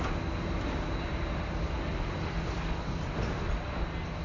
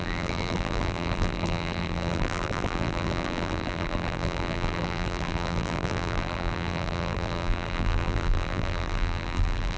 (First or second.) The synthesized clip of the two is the second